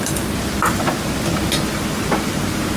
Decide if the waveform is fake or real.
fake